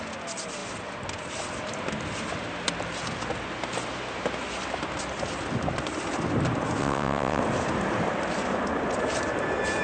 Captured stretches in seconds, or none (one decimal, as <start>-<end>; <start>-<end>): 0.0-6.8; 7.4-9.8